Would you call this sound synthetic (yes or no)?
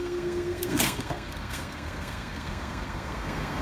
yes